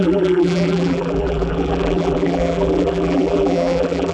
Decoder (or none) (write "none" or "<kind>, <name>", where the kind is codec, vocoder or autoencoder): vocoder, BigVGAN v2